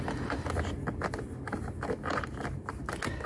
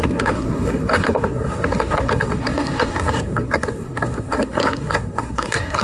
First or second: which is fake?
second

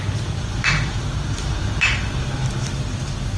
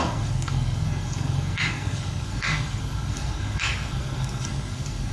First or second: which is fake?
second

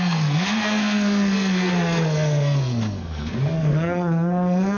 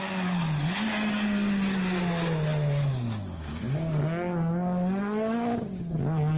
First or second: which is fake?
first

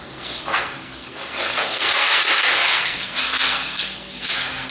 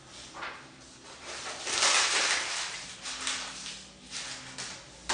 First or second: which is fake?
first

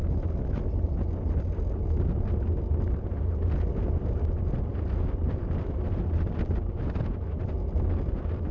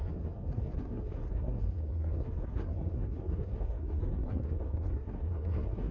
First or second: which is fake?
second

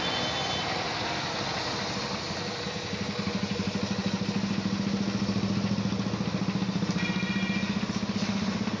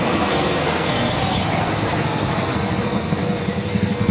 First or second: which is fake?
second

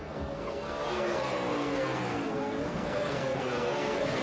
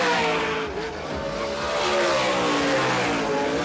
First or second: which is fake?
first